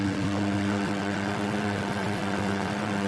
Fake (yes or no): yes